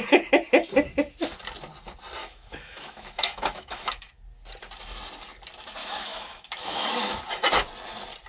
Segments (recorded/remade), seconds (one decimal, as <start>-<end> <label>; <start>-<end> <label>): 0.0-2.2 recorded; 2.2-4.2 remade; 4.2-5.8 recorded; 5.8-7.2 remade; 7.2-8.3 recorded